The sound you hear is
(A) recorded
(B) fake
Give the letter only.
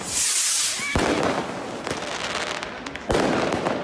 A